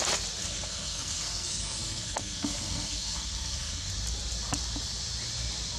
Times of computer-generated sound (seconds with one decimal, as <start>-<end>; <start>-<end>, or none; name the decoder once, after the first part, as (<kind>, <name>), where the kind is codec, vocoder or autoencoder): 0.4-3.9 (codec, SNAC)